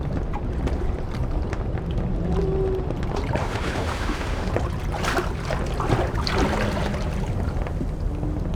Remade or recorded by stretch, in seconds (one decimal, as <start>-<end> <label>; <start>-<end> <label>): 0.0-3.4 recorded; 3.4-4.5 remade; 4.5-8.5 recorded